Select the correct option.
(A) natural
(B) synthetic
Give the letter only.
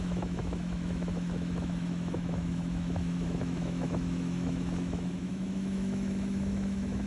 B